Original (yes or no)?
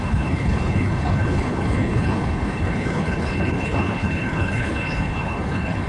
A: no